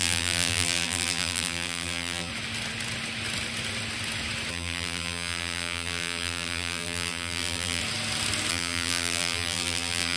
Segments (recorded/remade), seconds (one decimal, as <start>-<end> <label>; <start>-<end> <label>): 0.0-2.3 remade; 2.3-4.5 recorded; 4.5-7.8 remade; 7.8-8.5 recorded; 8.5-10.2 remade